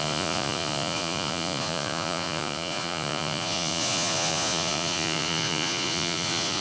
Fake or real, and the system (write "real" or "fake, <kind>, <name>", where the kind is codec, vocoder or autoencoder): fake, vocoder, Vocos